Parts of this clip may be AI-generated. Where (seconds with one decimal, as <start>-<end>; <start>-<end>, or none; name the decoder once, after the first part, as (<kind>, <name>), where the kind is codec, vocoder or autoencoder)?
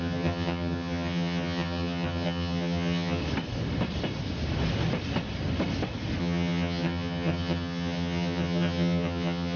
0.0-3.2 (vocoder, HiFi-GAN); 6.2-9.6